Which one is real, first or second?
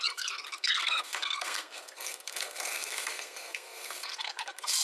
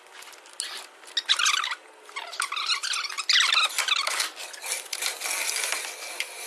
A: second